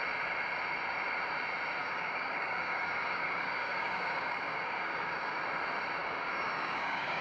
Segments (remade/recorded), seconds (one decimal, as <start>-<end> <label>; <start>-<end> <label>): 0.0-1.8 recorded; 1.8-5.4 remade; 5.4-6.0 recorded; 6.0-7.2 remade